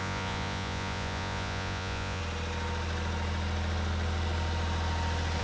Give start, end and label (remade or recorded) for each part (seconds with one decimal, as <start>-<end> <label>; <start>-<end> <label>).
0.0-2.2 remade; 2.2-5.4 recorded

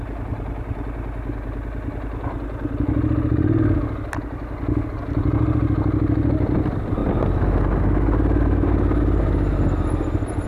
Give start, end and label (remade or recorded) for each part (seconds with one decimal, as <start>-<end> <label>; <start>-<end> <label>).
0.0-7.0 recorded; 7.0-9.2 remade; 9.2-10.5 recorded

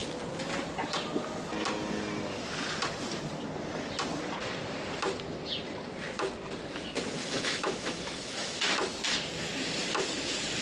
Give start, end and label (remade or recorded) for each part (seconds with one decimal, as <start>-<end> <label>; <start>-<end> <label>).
0.0-7.2 recorded; 7.2-8.6 remade; 8.6-10.6 recorded

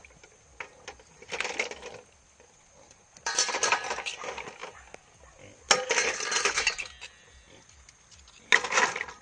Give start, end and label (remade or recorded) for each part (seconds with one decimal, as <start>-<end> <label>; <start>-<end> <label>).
0.0-9.2 recorded

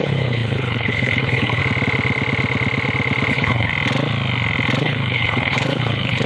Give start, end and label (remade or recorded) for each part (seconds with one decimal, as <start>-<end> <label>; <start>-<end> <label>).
0.0-1.6 remade; 1.6-3.3 recorded; 3.3-3.7 remade; 3.7-4.8 recorded; 4.8-6.3 remade

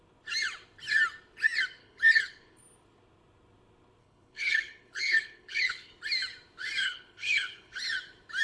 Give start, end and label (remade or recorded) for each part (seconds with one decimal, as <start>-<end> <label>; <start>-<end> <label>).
0.0-1.8 recorded; 1.8-2.6 remade; 2.6-4.0 recorded; 4.0-5.9 remade; 5.9-6.8 recorded; 6.8-7.8 remade; 7.8-8.4 recorded

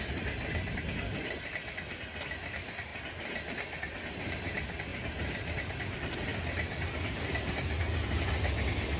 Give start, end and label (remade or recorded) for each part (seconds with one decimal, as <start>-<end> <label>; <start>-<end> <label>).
0.0-4.9 recorded; 4.9-5.6 remade; 5.6-9.0 recorded

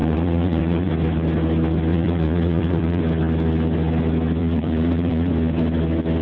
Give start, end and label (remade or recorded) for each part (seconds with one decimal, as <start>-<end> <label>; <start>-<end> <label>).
0.0-0.9 remade; 0.9-1.9 recorded; 1.9-3.0 remade; 3.0-4.4 recorded; 4.4-5.3 remade; 5.3-6.2 recorded